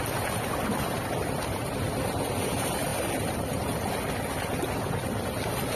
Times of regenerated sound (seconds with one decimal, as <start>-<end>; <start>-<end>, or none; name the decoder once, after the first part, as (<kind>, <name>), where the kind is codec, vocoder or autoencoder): none